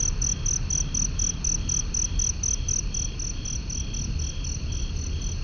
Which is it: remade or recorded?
recorded